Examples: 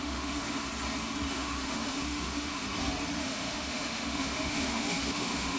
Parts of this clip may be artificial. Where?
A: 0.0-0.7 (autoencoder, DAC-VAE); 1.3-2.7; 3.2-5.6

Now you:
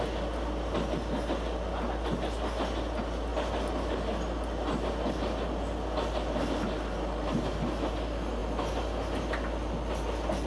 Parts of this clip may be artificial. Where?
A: none

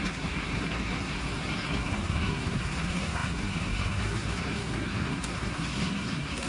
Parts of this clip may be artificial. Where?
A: 0.0-6.5 (codec, SNAC)

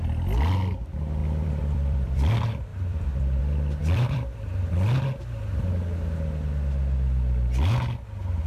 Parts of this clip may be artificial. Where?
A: 1.2-2.3 (vocoder, BigVGAN v2); 2.7-3.4; 3.8-4.5

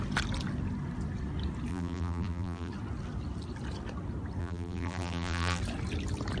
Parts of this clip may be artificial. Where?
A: 1.7-2.7 (vocoder, BigVGAN v2); 4.4-5.6

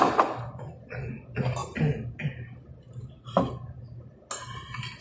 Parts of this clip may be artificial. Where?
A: none

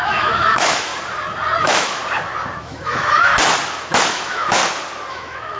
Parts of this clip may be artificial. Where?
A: 0.0-0.9 (autoencoder, DAC-VAE); 1.6-2.0; 2.6-3.3; 4.1-4.6; 5.1-5.6